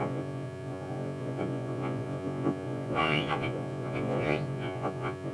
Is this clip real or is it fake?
fake